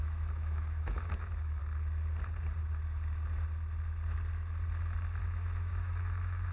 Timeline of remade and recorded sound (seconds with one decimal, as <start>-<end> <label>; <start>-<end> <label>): 0.0-1.6 remade; 1.6-5.2 recorded; 5.2-6.5 remade